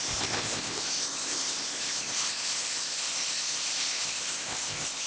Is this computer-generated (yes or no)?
yes